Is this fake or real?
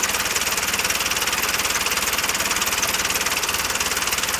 real